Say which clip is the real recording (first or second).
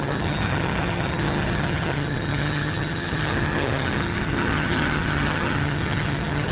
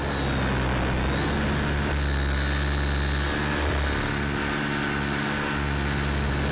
second